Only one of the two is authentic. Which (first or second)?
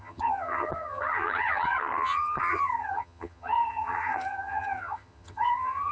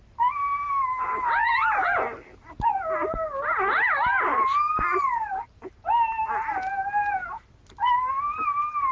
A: second